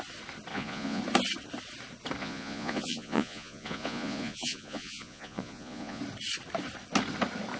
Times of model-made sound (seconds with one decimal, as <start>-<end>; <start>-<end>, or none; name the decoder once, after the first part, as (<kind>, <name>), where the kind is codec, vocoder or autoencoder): 0.5-1.0 (vocoder, Vocos); 2.2-6.0